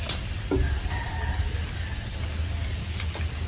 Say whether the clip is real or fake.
real